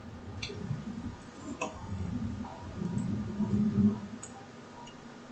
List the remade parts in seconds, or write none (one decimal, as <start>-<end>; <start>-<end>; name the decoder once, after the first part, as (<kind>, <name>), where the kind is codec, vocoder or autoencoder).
1.6-2.1 (codec, DAC)

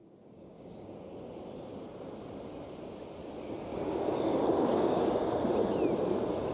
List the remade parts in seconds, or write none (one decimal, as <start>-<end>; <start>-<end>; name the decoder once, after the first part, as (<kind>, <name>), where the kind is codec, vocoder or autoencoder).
0.0-1.1 (codec, DAC); 3.7-5.2

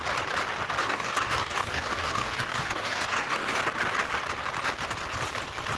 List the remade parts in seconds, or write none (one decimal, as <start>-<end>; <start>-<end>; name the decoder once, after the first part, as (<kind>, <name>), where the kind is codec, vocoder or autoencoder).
0.8-3.6 (codec, DAC)